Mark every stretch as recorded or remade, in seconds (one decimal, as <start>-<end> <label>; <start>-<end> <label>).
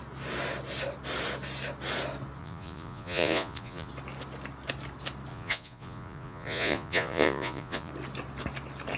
0.0-2.4 recorded; 2.4-3.9 remade; 3.9-5.3 recorded; 5.3-7.9 remade; 7.9-9.0 recorded